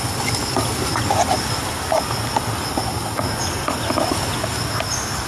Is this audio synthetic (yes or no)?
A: no